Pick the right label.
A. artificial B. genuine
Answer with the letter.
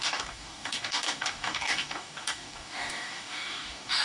A